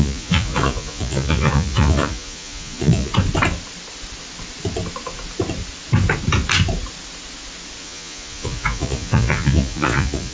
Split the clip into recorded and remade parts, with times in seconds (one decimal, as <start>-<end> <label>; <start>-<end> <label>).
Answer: 0.0-3.1 remade; 3.1-7.8 recorded; 7.8-10.3 remade